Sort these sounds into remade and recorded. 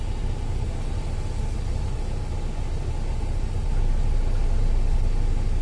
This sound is recorded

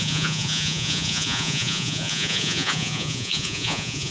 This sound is remade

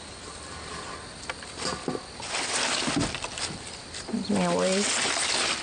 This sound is recorded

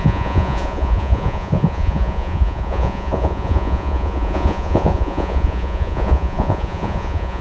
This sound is remade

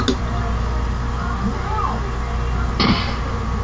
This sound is recorded